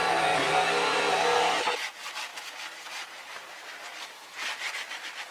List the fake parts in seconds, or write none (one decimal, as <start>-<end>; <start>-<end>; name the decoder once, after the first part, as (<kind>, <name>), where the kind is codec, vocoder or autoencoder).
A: none